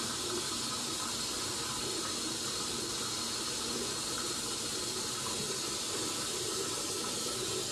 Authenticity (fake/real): real